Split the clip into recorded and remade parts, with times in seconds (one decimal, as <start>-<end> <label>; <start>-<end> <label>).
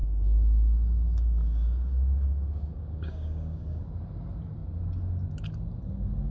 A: 0.0-3.8 remade; 3.8-6.3 recorded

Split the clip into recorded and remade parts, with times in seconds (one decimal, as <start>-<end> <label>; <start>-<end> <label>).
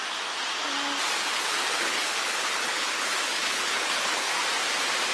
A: 0.0-1.2 recorded; 1.2-4.3 remade; 4.3-5.1 recorded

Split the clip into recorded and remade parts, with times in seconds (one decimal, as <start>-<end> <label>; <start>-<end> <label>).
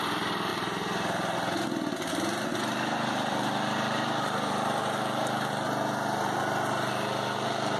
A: 0.0-7.8 recorded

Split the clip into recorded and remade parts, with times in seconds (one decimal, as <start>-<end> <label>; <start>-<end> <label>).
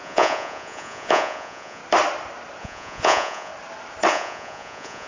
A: 0.0-1.8 remade; 1.8-2.6 recorded; 2.6-3.5 remade; 3.5-4.1 recorded; 4.1-5.1 remade